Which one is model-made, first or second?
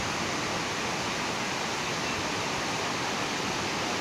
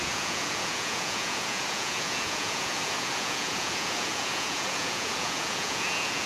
second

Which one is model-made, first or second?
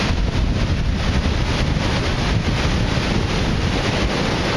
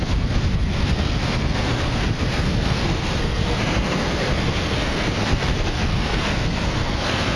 second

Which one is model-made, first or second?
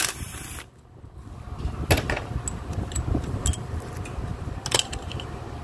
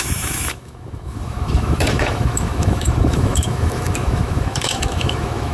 second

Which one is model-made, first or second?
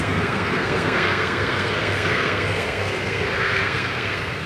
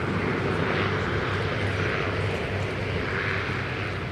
first